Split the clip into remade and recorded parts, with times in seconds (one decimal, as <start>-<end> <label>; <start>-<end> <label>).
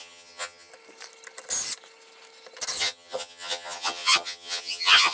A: 0.0-0.7 remade; 0.7-2.8 recorded; 2.8-5.1 remade